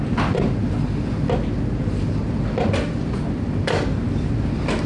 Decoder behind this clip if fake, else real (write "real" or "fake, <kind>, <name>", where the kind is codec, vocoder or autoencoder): real